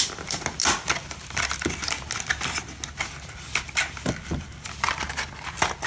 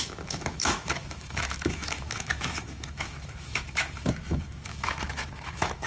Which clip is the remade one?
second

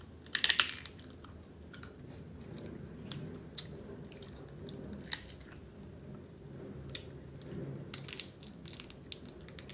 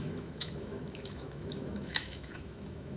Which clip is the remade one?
second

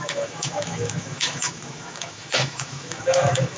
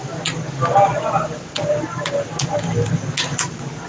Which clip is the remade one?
first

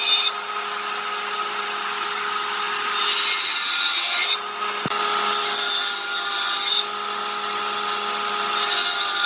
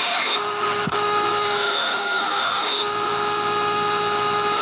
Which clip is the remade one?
second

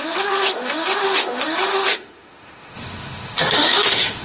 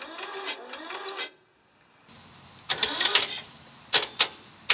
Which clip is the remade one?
first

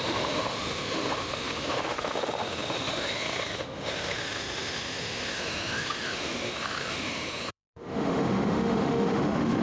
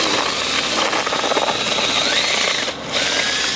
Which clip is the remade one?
first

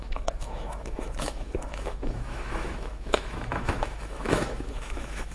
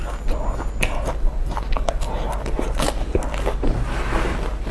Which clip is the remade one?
first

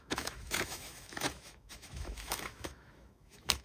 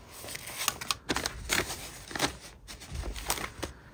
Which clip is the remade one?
first